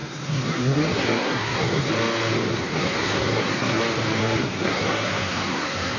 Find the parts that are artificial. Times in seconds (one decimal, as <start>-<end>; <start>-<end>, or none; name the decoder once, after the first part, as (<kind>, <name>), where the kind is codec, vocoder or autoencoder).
0.0-1.9 (codec, SNAC); 2.5-3.8; 4.2-6.0